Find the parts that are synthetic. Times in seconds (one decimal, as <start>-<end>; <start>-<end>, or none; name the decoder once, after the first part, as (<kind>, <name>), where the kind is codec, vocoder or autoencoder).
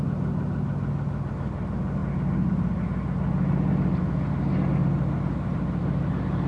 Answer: none